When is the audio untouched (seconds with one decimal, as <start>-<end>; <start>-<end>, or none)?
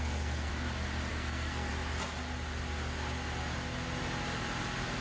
0.5-1.1; 1.7-5.0